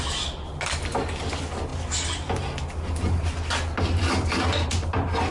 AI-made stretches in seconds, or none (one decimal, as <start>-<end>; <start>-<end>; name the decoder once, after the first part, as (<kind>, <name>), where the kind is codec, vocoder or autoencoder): none